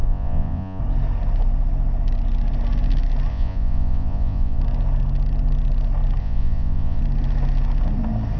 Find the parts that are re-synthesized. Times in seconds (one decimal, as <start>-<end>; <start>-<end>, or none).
0.0-0.8; 3.3-4.6; 6.2-7.0